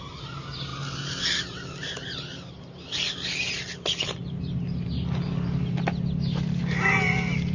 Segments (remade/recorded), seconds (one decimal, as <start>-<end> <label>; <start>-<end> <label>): 0.0-7.5 recorded